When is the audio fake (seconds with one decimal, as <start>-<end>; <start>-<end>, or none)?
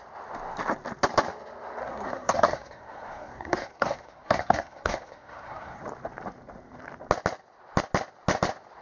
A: 1.8-5.8